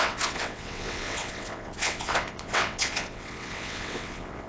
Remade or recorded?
remade